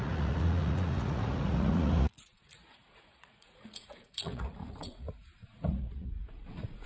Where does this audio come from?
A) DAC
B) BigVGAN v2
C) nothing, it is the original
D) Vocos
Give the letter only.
D